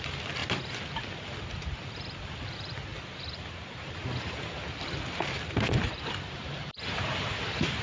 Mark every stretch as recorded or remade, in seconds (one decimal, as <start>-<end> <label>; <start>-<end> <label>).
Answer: 0.0-0.4 remade; 0.4-1.9 recorded; 1.9-7.8 remade